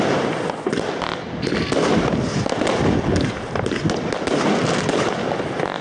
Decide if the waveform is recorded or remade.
recorded